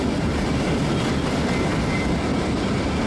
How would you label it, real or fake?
real